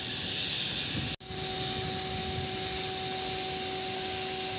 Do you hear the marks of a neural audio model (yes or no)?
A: no